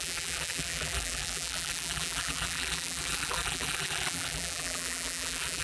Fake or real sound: fake